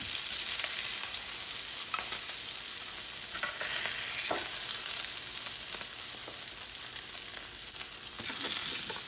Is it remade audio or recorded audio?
recorded